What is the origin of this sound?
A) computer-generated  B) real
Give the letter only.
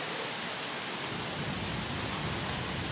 B